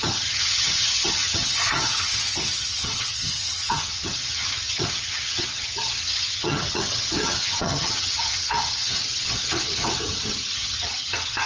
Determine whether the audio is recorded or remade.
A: remade